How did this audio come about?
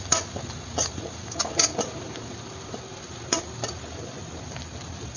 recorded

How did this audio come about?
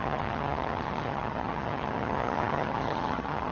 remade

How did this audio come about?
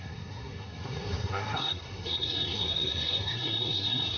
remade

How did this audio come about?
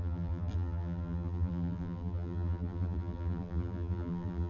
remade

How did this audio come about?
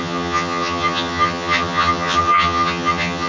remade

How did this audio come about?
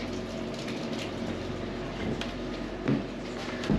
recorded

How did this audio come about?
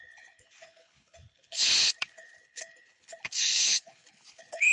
remade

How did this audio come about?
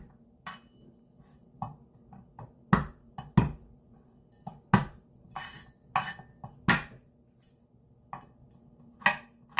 recorded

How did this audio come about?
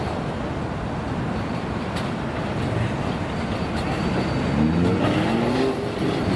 recorded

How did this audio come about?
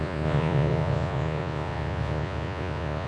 remade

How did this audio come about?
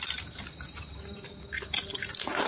remade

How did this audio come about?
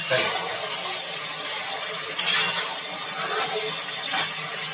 recorded